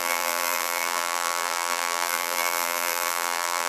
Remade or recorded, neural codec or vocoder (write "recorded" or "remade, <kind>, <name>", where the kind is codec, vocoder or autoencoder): remade, vocoder, BigVGAN v2